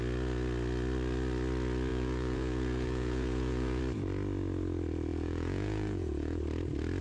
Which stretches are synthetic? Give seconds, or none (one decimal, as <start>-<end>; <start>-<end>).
1.9-3.8; 5.1-6.4